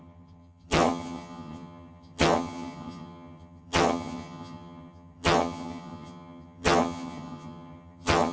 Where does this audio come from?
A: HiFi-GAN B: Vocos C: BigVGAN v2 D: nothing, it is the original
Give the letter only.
A